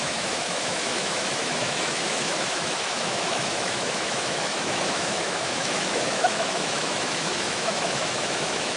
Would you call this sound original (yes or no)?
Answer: no